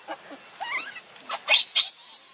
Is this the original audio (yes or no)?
yes